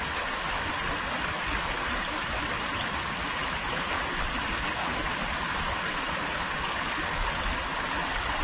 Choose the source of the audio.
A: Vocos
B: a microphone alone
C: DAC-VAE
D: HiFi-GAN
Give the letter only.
B